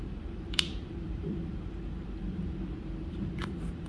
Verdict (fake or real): fake